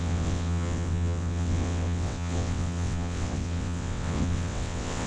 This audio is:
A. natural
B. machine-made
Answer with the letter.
B